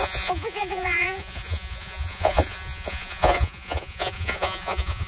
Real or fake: fake